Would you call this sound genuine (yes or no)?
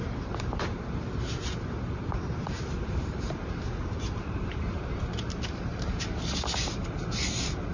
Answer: no